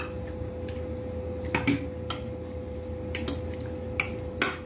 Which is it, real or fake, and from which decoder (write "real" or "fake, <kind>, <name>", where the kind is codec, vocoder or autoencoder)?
real